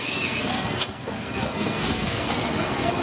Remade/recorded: remade